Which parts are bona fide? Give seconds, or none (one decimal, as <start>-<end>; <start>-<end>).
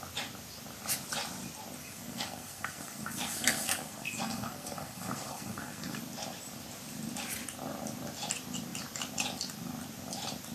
0.0-1.8; 6.0-10.5